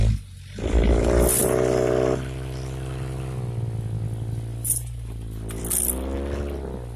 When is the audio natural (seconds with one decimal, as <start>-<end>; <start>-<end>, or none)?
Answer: 0.0-7.0